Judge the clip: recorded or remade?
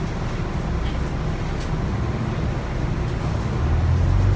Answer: recorded